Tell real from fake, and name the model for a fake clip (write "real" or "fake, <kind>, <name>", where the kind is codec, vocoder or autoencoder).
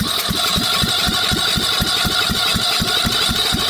real